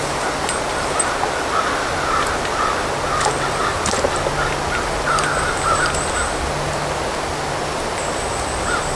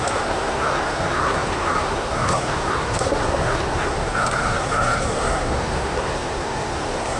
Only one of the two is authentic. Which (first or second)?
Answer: first